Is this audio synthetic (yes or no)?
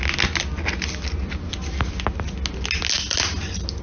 no